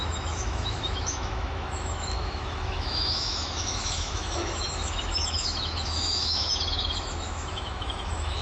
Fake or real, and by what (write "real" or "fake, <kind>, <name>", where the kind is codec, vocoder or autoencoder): fake, autoencoder, DAC-VAE